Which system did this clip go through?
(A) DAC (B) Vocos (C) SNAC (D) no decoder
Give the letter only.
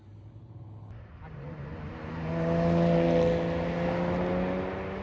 D